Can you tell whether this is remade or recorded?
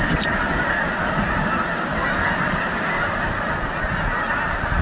recorded